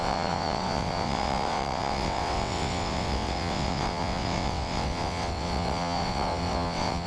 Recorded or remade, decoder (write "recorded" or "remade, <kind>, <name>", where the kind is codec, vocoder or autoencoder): remade, vocoder, WaveNeXt